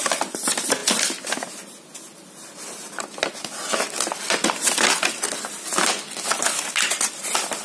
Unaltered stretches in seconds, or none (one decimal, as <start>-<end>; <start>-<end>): 0.0-7.6